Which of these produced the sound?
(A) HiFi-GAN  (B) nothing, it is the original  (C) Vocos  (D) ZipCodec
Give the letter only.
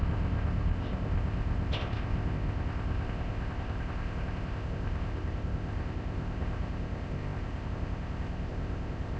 D